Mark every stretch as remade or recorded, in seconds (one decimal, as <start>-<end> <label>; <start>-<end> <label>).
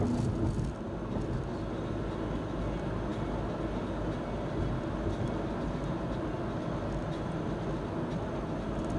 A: 0.0-9.0 recorded